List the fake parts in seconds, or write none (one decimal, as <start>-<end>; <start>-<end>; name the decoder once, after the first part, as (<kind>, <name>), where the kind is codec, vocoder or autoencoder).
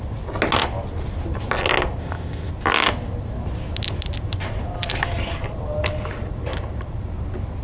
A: 2.0-2.5 (codec, ZipCodec)